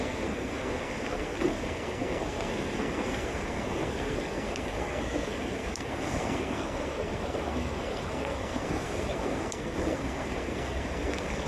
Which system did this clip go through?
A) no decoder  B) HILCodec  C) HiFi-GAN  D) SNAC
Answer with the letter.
D